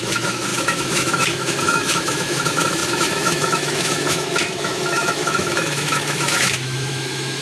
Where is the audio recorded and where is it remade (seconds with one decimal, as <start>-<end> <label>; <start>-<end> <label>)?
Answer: 0.0-7.4 remade